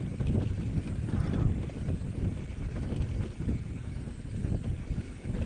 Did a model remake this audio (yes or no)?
yes